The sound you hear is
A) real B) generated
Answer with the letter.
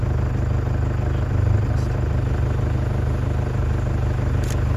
A